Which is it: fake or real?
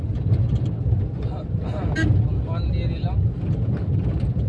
real